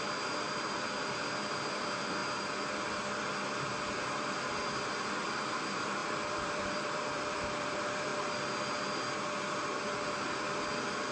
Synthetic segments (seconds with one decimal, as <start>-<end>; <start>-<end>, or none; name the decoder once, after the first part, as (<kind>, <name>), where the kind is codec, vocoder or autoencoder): 0.0-2.2 (vocoder, BigVGAN v2); 5.1-8.1